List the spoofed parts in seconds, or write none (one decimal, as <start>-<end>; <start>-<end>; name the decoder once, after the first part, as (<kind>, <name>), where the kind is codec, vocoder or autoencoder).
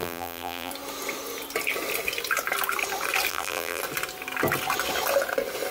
0.0-0.7 (vocoder, BigVGAN v2); 3.3-3.8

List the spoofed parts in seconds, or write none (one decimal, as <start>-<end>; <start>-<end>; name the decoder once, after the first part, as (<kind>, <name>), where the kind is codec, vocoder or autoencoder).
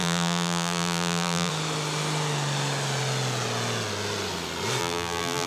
0.0-1.5 (vocoder, BigVGAN v2); 4.8-5.5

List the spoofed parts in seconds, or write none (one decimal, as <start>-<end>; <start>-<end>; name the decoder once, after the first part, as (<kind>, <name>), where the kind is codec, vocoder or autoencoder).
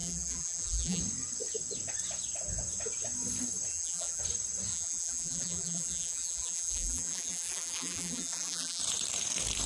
0.0-1.0 (vocoder, BigVGAN v2); 3.7-4.2; 4.7-8.8